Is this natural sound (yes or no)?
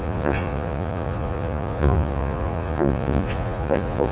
no